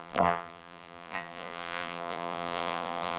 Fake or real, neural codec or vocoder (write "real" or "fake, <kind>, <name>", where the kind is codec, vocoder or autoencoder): fake, vocoder, BigVGAN v2